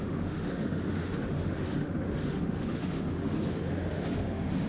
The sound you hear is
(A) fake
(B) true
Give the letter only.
A